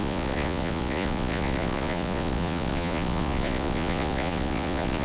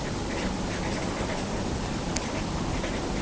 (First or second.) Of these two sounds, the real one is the second